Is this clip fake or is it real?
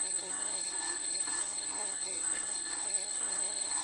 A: fake